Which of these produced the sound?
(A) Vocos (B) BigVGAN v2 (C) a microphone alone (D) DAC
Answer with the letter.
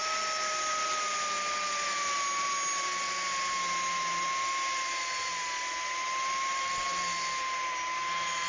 C